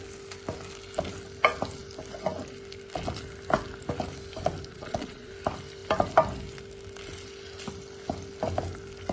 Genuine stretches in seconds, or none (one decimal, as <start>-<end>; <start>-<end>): 0.0-4.7; 5.3-9.1